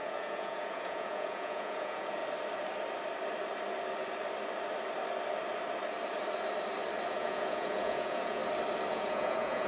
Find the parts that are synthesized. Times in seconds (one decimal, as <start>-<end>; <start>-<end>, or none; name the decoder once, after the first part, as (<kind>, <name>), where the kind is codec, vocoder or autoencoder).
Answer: 0.0-2.2 (vocoder, Vocos); 7.1-8.4; 8.9-9.7